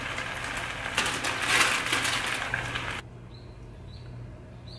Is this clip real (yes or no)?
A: yes